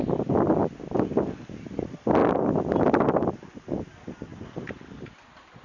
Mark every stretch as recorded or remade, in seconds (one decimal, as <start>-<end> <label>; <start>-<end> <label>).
0.0-5.6 recorded